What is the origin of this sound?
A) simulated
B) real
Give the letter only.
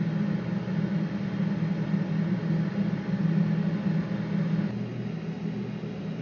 B